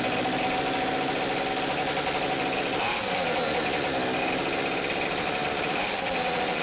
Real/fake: real